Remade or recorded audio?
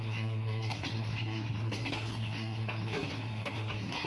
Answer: remade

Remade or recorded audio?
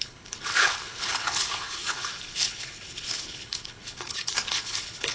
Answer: remade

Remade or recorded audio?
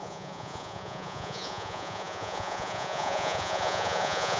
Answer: remade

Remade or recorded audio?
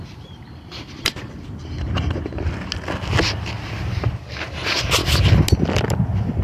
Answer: recorded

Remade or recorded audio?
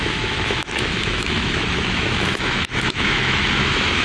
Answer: remade